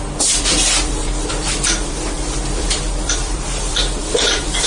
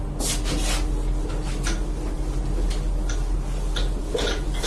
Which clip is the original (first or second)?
second